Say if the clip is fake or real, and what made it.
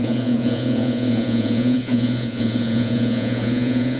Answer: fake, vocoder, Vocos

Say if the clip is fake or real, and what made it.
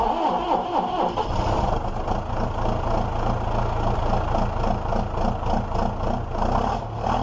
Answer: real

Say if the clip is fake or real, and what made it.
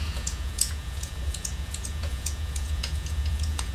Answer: fake, vocoder, Vocos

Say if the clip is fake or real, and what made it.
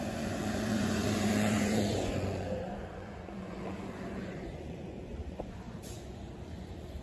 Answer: fake, vocoder, Vocos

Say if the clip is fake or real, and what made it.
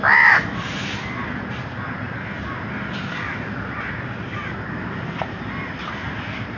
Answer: real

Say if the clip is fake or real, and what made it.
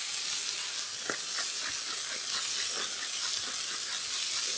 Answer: real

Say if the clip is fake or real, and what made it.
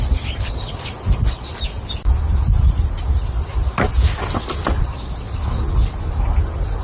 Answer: real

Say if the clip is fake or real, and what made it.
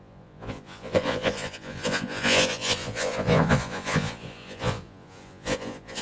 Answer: fake, vocoder, Vocos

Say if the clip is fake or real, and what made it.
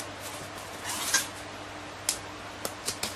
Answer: real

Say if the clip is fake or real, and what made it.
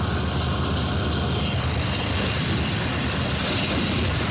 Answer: real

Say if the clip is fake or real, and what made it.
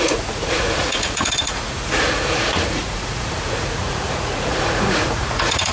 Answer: fake, vocoder, Vocos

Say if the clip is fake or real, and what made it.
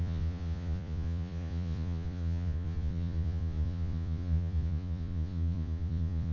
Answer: fake, vocoder, Vocos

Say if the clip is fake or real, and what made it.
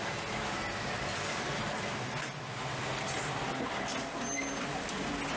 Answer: real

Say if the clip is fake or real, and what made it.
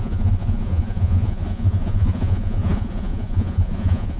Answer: fake, vocoder, Vocos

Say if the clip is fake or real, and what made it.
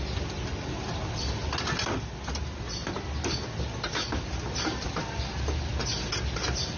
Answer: real